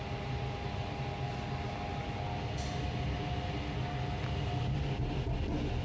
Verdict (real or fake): real